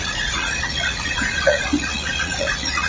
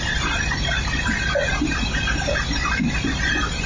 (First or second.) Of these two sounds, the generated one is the first